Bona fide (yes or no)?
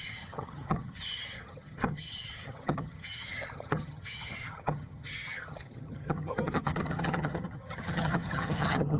no